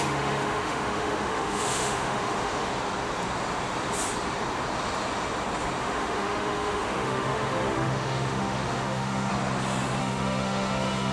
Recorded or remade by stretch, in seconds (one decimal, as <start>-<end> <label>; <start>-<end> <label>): 0.0-2.7 remade; 2.7-5.8 recorded; 5.8-9.3 remade; 9.3-10.0 recorded; 10.0-11.1 remade